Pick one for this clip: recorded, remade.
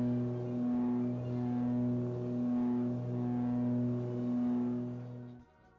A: recorded